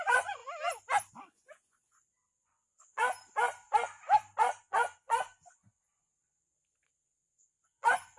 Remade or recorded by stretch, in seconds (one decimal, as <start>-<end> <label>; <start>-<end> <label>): 0.0-0.4 remade; 0.4-1.1 recorded; 1.1-3.0 remade; 3.0-4.6 recorded; 4.6-8.2 remade